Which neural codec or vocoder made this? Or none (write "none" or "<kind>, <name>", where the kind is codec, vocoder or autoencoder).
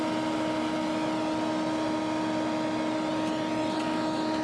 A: none